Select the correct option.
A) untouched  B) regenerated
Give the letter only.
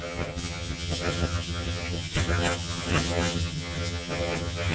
B